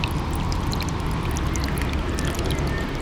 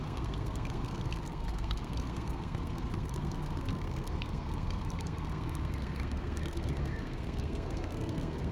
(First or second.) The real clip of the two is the first